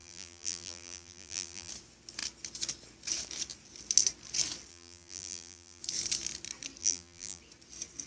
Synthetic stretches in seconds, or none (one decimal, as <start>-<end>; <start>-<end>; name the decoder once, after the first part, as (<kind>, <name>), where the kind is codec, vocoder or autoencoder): 0.0-1.7 (vocoder, BigVGAN v2); 4.7-5.8; 6.8-7.4